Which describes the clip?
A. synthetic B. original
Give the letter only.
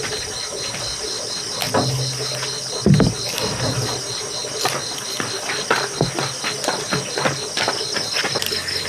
B